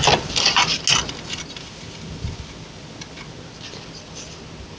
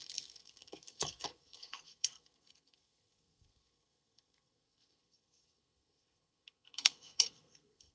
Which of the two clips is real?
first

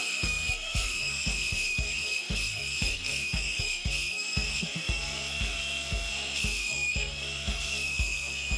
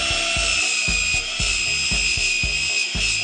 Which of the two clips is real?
second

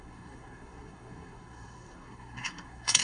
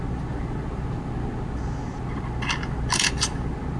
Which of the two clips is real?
second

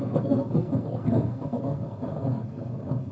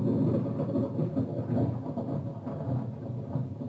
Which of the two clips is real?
second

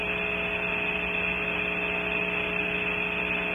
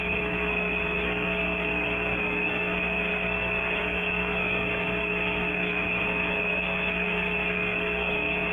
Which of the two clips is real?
first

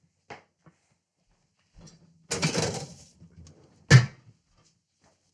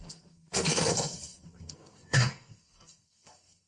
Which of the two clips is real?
first